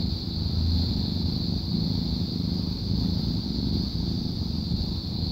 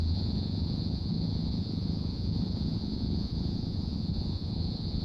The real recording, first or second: first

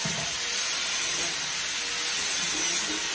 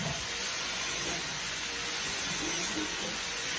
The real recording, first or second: first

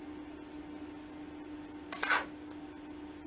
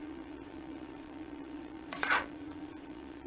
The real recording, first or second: first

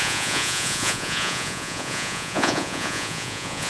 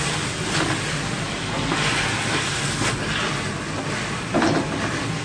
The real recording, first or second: second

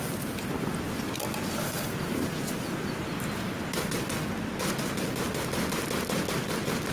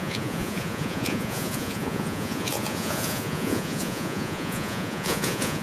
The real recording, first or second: first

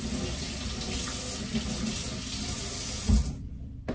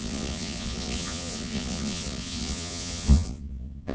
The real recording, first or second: first